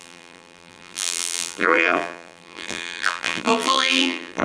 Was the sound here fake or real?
fake